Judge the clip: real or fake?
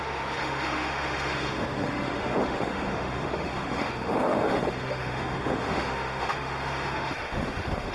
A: fake